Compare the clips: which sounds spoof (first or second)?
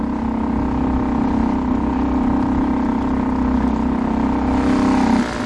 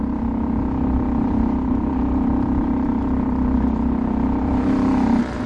second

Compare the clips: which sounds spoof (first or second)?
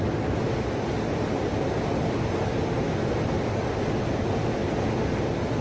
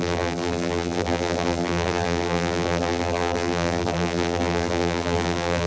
second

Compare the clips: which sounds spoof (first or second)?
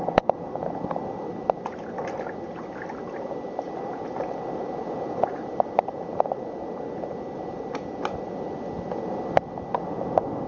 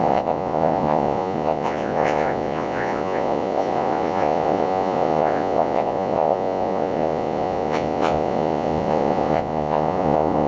second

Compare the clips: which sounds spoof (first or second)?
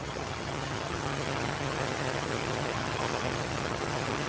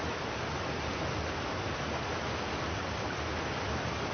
first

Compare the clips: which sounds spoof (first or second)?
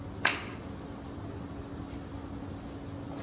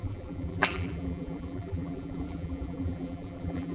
second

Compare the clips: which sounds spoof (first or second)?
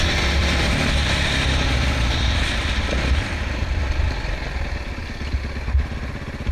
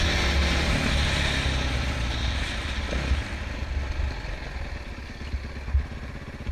first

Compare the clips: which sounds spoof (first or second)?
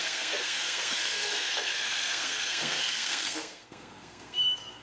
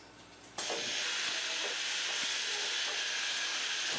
first